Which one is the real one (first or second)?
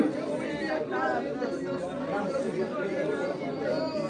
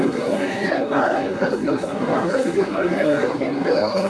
first